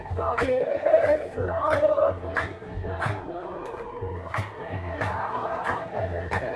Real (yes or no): no